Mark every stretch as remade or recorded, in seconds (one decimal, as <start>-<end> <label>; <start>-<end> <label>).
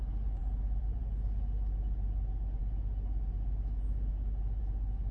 0.0-0.4 recorded; 0.4-1.0 remade; 1.0-5.1 recorded